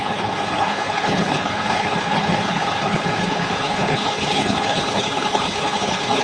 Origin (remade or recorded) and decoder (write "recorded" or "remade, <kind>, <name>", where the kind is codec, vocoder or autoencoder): remade, codec, HILCodec